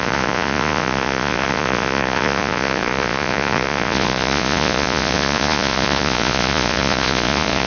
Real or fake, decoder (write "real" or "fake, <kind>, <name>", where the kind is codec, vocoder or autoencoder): fake, vocoder, Vocos